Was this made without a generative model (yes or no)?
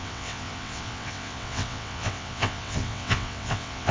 no